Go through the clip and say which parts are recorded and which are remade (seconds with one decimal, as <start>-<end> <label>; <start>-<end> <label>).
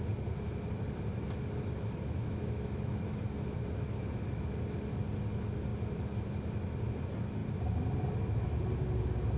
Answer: 0.0-1.1 recorded; 1.1-4.4 remade; 4.4-9.4 recorded